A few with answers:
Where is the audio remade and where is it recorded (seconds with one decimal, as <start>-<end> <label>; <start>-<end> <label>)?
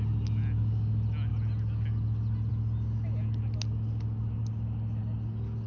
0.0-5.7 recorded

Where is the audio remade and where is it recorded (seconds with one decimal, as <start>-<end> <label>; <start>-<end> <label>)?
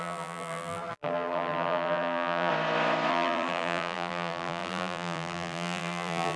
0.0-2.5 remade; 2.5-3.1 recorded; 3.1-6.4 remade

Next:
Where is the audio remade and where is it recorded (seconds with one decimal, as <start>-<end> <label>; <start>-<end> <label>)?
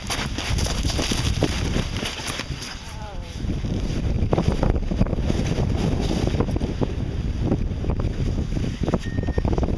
0.0-1.4 recorded; 1.4-4.5 remade; 4.5-9.8 recorded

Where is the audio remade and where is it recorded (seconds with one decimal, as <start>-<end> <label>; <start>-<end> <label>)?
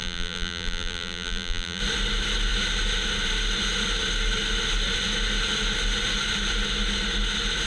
0.0-1.8 remade; 1.8-7.7 recorded